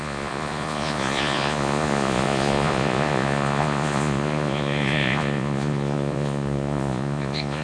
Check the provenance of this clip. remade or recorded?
remade